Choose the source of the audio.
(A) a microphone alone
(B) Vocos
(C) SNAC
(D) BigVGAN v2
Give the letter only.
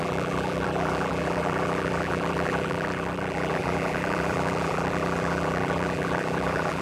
D